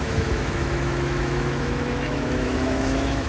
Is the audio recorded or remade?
remade